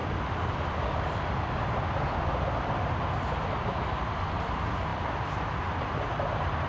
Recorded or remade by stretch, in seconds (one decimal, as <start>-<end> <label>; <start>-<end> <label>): 0.0-4.0 recorded; 4.0-6.7 remade